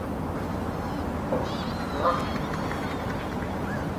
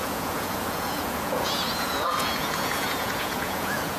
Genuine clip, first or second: first